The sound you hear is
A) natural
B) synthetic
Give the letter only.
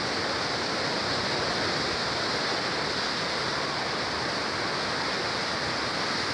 A